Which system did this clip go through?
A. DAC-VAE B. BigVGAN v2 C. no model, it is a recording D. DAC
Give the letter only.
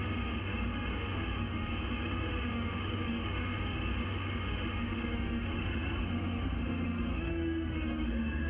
A